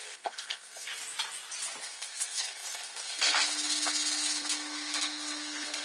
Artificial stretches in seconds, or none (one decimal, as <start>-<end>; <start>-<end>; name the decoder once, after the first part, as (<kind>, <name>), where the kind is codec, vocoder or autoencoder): 0.0-0.9 (codec, SNAC); 1.8-5.8